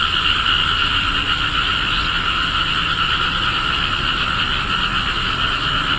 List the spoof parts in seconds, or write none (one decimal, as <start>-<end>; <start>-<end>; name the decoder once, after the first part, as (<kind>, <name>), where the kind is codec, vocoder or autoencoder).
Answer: none